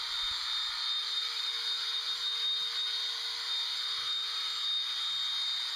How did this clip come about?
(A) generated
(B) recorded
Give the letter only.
B